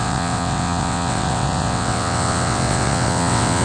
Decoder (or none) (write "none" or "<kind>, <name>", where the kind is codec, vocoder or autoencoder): vocoder, WaveNeXt